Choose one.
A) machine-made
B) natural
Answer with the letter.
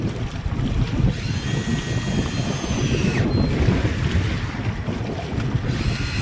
B